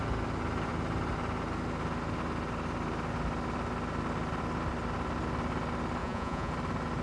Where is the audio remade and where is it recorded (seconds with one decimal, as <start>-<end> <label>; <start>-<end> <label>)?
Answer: 0.0-6.0 recorded; 6.0-6.5 remade; 6.5-7.0 recorded